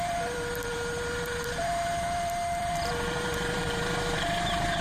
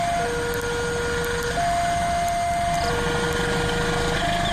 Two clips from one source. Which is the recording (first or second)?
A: second